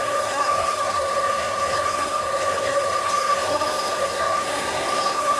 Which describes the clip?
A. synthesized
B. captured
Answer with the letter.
A